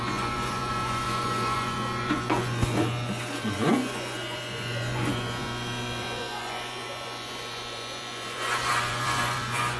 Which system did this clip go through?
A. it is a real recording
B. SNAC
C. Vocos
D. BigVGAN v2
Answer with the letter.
C